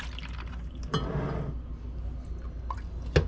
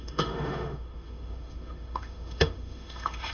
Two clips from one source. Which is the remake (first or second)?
second